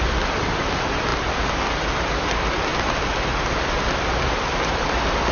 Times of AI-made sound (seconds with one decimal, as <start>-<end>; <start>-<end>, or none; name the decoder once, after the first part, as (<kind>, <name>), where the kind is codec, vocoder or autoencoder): none